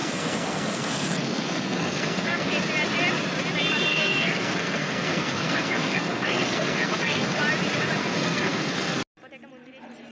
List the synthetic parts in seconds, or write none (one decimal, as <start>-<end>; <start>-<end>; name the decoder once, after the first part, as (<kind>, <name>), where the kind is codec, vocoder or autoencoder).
0.0-2.5 (codec, SNAC); 3.9-7.4; 8.0-9.0